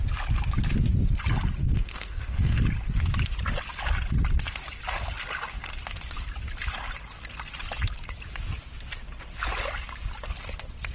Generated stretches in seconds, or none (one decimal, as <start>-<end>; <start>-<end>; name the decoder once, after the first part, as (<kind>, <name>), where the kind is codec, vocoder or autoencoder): 1.6-2.6 (codec, SNAC)